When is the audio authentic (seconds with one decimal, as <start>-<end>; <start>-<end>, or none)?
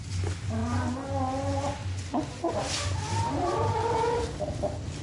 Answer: 0.0-5.0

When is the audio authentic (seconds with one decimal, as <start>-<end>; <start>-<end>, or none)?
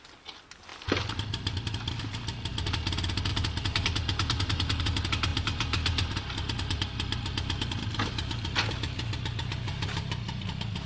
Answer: 0.0-0.7; 2.0-3.3; 4.8-5.3; 8.3-10.9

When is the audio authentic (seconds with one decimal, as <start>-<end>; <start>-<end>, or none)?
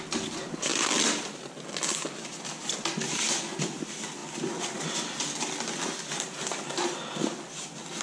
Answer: 0.0-8.0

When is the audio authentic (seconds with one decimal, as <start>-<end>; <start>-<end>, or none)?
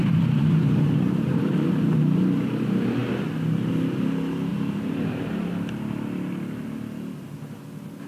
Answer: 2.0-4.5; 5.3-8.1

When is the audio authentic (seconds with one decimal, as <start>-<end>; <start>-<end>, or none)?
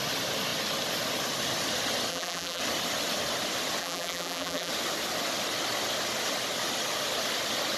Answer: 0.0-2.1; 2.6-3.8; 4.7-7.8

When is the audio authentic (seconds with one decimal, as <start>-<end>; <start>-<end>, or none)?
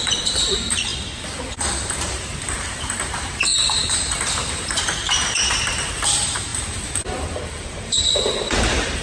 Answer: 0.9-1.8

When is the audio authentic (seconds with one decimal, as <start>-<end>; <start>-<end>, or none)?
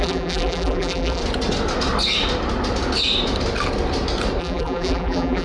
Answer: 1.2-4.4